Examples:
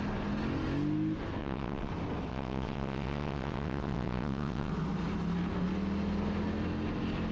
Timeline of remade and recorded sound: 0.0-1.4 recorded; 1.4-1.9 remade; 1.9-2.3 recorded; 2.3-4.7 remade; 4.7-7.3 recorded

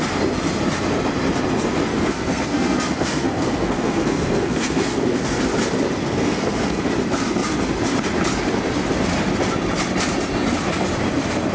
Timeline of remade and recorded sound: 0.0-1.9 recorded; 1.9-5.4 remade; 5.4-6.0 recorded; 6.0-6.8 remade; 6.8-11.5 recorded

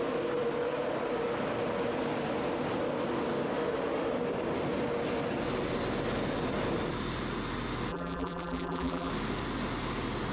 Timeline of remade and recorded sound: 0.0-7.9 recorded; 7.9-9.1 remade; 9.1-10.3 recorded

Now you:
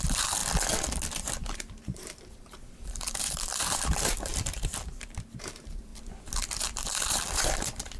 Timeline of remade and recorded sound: 0.0-0.4 remade; 0.4-1.1 recorded; 1.1-5.9 remade; 5.9-6.6 recorded; 6.6-8.0 remade

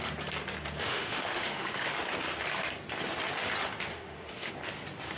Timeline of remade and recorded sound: 0.0-0.8 recorded; 0.8-1.9 remade; 1.9-3.9 recorded; 3.9-4.5 remade; 4.5-5.2 recorded